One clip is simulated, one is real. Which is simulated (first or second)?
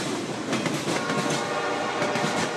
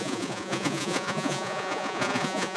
second